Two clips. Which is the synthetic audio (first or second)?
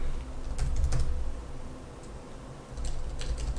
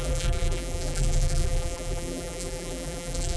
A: second